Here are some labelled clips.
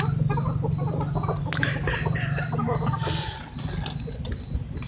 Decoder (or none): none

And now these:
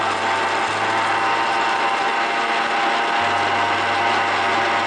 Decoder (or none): none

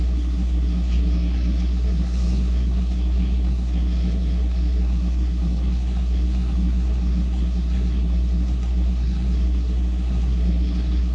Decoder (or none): codec, SNAC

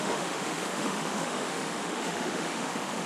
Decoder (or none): autoencoder, DAC-VAE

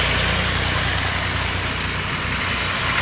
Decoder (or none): none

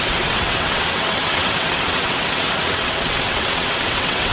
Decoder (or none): vocoder, WaveNeXt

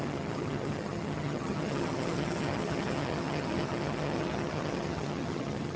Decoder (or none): vocoder, HiFi-GAN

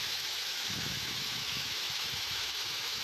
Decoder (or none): autoencoder, DAC-VAE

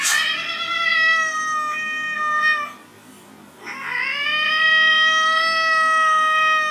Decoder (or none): none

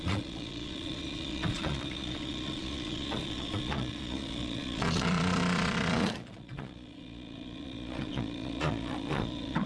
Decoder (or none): vocoder, Vocos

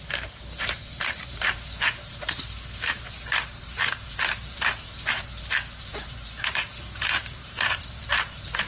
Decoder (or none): vocoder, BigVGAN v2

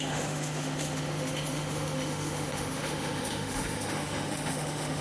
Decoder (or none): autoencoder, DAC-VAE